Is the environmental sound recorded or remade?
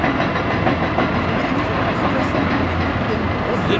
recorded